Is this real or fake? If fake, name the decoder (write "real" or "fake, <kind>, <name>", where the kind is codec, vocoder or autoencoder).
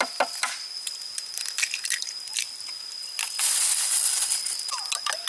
real